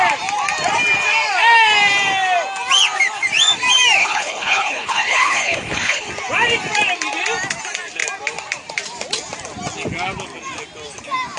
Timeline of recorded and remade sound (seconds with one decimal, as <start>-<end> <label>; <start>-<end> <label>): 0.0-4.0 recorded; 4.0-6.1 remade; 6.1-11.4 recorded